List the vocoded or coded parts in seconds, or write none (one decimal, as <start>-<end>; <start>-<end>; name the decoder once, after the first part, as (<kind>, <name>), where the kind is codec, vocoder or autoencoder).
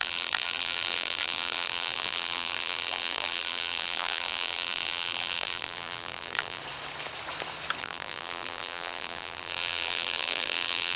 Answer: 0.0-6.6 (vocoder, BigVGAN v2); 7.8-11.0